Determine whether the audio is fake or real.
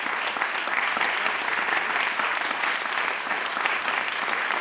real